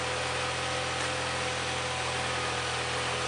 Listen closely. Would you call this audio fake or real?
real